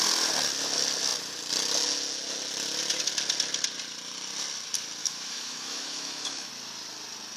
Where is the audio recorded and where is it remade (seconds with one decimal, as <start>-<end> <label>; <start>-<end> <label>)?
0.0-5.0 recorded; 5.0-6.5 remade; 6.5-7.4 recorded